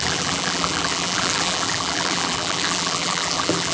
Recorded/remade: remade